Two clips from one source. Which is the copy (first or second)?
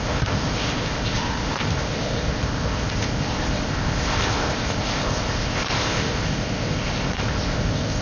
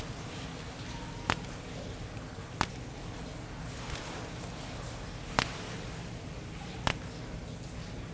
first